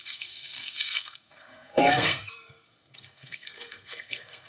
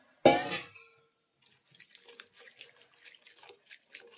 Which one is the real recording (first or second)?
second